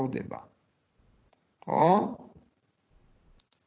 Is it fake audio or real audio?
fake